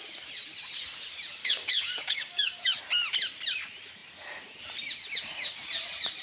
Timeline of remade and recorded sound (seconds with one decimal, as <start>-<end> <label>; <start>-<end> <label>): 0.0-1.4 recorded; 1.4-2.8 remade; 2.8-6.2 recorded